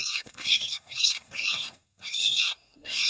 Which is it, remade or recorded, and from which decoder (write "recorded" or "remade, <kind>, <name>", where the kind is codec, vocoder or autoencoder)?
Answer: remade, codec, SNAC